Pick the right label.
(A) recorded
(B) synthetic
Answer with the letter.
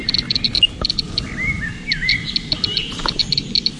A